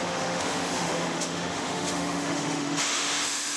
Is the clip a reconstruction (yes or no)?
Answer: yes